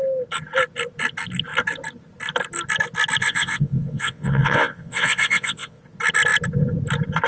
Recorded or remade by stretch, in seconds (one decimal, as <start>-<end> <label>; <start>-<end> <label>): 0.0-3.2 recorded; 3.2-5.8 remade; 5.8-7.3 recorded